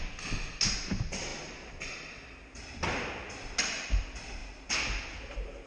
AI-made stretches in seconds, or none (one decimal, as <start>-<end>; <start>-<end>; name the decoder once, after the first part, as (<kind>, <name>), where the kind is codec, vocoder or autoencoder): none